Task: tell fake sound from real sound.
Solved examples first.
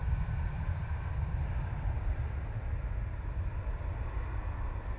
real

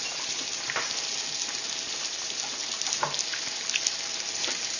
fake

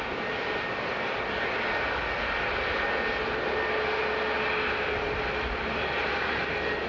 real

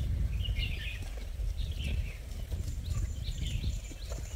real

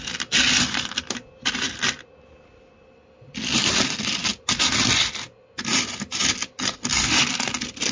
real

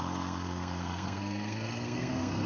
fake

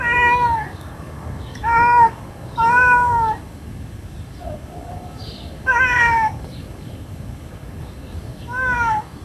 fake